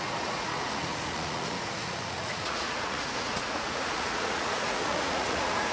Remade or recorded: remade